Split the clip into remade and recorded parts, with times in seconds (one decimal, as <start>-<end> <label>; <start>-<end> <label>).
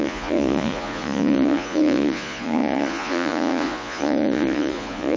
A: 0.0-5.2 remade